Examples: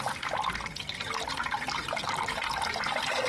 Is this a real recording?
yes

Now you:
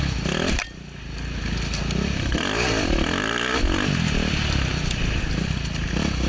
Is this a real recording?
yes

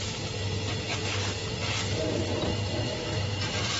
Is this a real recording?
yes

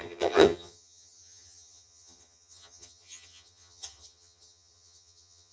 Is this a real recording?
no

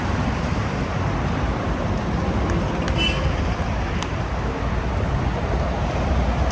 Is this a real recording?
yes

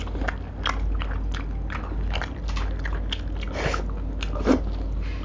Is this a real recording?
yes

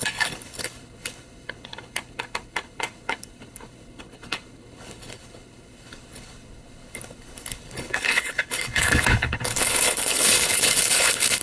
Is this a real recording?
no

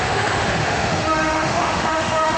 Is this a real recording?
no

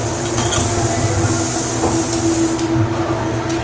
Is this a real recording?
yes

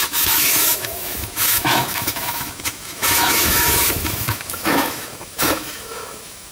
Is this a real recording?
no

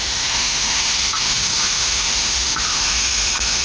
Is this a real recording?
no